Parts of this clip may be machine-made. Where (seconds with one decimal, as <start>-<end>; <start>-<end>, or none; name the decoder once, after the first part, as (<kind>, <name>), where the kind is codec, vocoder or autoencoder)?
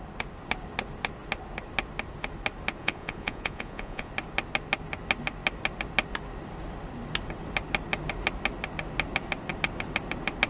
2.8-4.1 (vocoder, Vocos)